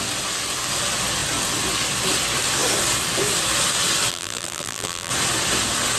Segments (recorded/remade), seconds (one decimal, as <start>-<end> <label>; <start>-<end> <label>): 0.0-4.1 recorded; 4.1-5.1 remade; 5.1-6.0 recorded